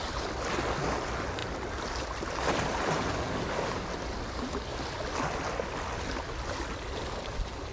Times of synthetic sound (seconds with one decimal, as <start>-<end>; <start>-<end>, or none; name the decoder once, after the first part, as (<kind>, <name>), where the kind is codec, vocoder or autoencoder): none

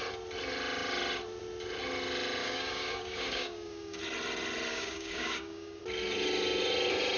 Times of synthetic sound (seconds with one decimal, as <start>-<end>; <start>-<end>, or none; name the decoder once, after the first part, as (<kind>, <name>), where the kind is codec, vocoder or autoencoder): 2.4-4.0 (codec, DAC); 4.7-5.8

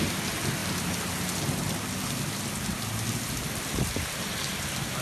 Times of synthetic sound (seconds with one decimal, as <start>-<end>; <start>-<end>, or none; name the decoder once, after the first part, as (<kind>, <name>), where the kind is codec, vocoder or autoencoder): none